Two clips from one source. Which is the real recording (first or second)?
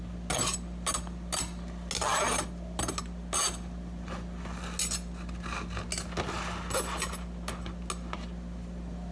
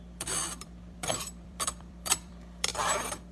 first